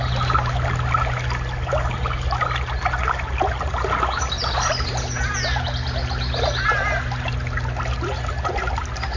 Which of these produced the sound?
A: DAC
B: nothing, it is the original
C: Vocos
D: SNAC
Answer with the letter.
B